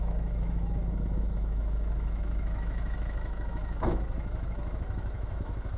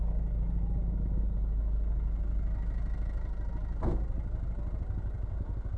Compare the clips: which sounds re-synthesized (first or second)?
first